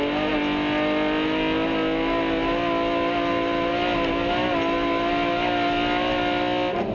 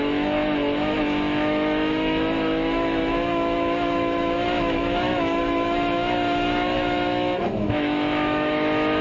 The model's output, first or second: second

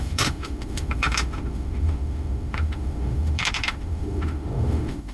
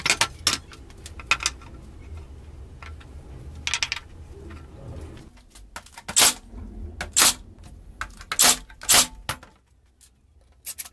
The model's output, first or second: first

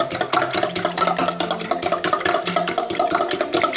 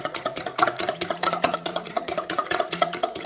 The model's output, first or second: second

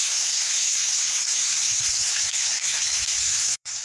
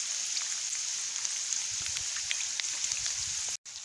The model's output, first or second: first